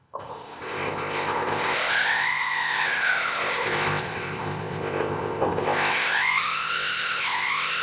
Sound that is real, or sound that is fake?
fake